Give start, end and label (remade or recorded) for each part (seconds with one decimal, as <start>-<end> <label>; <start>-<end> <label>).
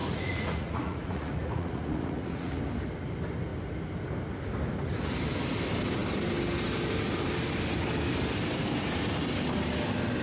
0.0-2.6 remade; 2.6-10.2 recorded